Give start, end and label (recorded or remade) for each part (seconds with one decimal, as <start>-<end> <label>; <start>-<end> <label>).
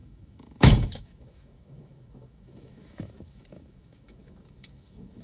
0.0-5.2 remade